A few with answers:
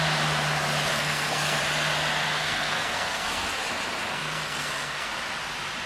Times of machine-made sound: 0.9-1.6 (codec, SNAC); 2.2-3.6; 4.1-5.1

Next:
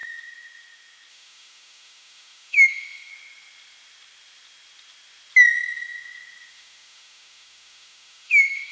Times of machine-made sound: 1.1-3.1 (autoencoder, DAC-VAE); 6.5-8.7